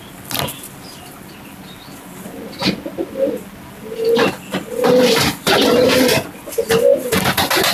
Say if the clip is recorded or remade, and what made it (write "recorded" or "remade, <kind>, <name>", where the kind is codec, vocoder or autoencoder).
recorded